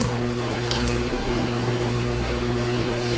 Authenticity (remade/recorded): remade